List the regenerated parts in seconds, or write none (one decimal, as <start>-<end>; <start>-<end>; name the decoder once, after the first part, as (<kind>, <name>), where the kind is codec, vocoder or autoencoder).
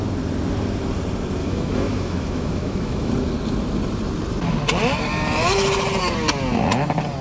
1.4-3.1 (autoencoder, DAC-VAE)